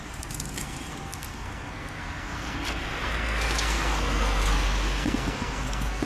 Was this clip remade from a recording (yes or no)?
yes